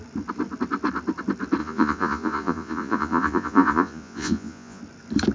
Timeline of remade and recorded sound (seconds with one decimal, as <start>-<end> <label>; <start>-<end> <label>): 0.0-1.6 recorded; 1.6-4.8 remade; 4.8-5.3 recorded